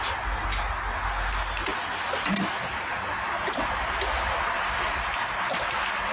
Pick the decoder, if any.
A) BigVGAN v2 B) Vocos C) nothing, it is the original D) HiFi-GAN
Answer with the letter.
C